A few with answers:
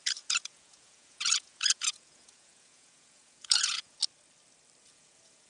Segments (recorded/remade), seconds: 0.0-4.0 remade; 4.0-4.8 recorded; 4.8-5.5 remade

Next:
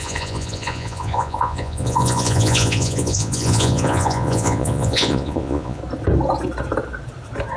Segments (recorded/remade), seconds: 0.0-5.8 remade; 5.8-7.6 recorded

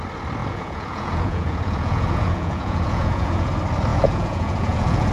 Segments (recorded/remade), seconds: 0.0-0.4 recorded; 0.4-3.5 remade; 3.5-3.9 recorded; 3.9-5.1 remade

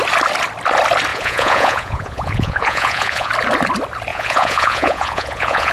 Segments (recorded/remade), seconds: 0.0-1.1 recorded; 1.1-3.3 remade; 3.3-4.1 recorded; 4.1-5.7 remade

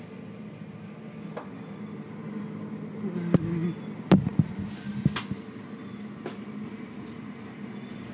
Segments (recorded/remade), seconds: 0.0-8.1 recorded

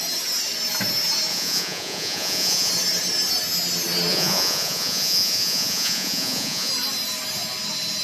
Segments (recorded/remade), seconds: 0.0-1.3 recorded; 1.3-2.7 remade; 2.7-4.1 recorded; 4.1-6.7 remade; 6.7-8.0 recorded